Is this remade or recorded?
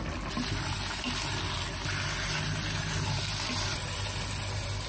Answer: recorded